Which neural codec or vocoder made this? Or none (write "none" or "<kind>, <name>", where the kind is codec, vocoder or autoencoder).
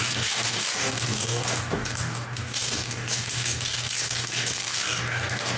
codec, DAC